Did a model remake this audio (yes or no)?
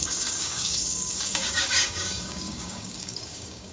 yes